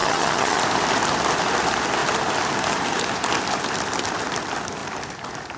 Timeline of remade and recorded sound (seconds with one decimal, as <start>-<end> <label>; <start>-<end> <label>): 0.0-0.6 remade; 0.6-5.6 recorded